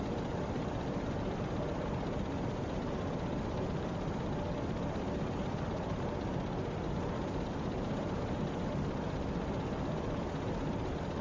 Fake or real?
real